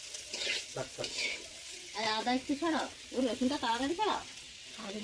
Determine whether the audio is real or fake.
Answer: fake